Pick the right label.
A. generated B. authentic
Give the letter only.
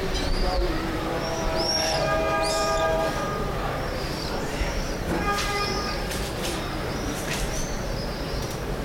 A